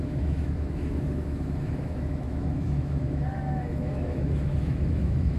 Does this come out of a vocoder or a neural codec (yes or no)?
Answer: yes